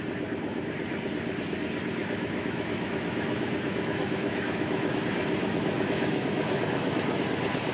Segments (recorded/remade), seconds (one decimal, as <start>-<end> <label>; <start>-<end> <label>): 0.0-2.0 recorded; 2.0-5.0 remade; 5.0-5.4 recorded; 5.4-7.2 remade; 7.2-7.7 recorded

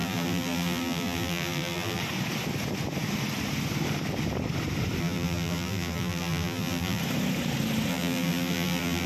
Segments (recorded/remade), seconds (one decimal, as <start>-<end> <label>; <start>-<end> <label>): 0.0-2.0 remade; 2.0-5.0 recorded; 5.0-7.0 remade; 7.0-7.9 recorded; 7.9-9.1 remade